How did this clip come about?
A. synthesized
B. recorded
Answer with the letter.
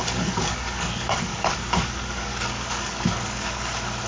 A